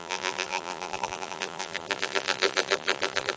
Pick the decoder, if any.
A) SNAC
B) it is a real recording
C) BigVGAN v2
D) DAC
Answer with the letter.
C